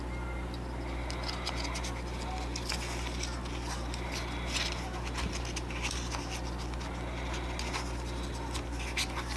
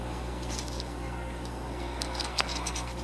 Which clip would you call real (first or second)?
first